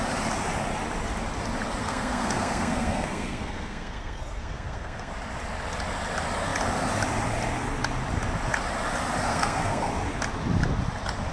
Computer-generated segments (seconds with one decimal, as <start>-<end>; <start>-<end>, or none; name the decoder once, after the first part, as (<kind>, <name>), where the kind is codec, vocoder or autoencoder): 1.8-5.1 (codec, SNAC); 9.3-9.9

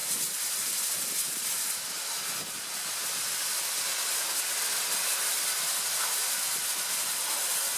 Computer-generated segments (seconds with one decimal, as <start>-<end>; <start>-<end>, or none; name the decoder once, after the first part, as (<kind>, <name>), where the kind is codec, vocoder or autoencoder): none

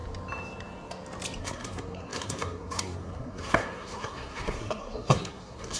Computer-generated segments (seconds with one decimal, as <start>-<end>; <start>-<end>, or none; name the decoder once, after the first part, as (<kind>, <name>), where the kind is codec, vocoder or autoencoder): 1.4-5.8 (codec, SNAC)

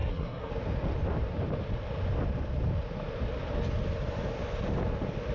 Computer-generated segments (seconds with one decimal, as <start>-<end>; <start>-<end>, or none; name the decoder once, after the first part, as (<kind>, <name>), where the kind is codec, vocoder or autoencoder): 0.0-0.5 (codec, SNAC)

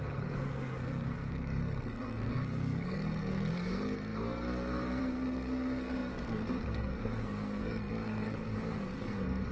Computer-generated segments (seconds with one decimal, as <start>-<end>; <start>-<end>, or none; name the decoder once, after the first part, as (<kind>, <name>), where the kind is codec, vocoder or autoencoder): 0.0-9.5 (codec, SNAC)

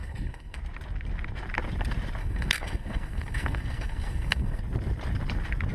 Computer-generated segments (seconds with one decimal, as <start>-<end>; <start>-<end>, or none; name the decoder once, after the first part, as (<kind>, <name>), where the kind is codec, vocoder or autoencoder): 0.0-0.6 (codec, SNAC); 2.2-4.6

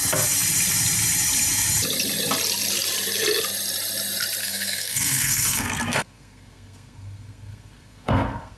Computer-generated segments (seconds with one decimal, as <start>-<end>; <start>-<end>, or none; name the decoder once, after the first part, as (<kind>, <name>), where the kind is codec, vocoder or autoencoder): 4.4-8.6 (codec, SNAC)

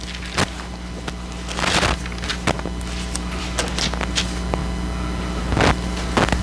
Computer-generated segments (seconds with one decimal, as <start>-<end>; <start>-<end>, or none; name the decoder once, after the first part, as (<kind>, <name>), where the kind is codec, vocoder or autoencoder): none